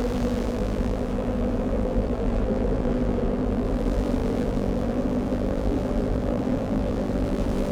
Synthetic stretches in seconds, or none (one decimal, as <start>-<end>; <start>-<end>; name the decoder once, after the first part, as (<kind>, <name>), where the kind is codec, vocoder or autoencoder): 0.0-7.7 (vocoder, BigVGAN v2)